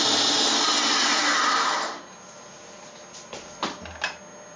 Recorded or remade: recorded